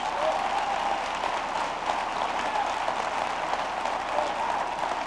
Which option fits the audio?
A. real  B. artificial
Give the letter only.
A